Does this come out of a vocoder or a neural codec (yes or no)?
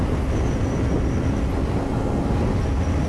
no